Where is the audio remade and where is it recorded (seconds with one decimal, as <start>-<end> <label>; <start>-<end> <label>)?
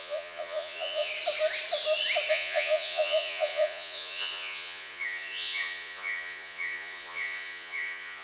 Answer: 0.0-1.1 remade; 1.1-2.3 recorded; 2.3-8.2 remade